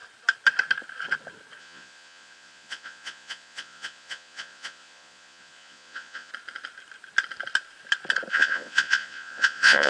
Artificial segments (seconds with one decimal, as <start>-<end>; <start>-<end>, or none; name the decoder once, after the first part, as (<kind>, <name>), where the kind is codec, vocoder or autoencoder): 1.6-6.3 (vocoder, Vocos); 8.3-9.9